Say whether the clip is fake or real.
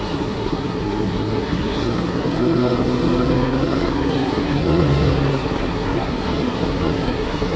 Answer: fake